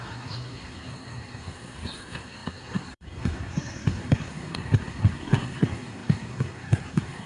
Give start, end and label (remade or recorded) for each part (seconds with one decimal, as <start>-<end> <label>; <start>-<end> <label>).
0.0-7.3 remade